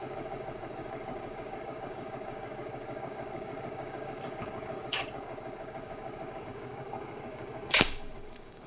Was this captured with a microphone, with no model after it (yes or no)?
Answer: no